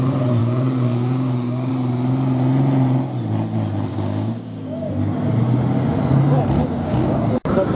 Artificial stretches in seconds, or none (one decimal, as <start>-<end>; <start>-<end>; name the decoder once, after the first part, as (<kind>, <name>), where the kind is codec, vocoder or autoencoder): 0.4-1.7 (codec, DAC); 3.9-4.9; 6.6-7.7